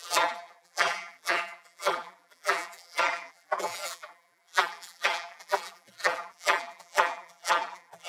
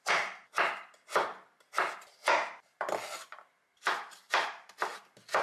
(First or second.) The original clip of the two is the second